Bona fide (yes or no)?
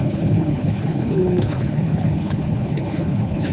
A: no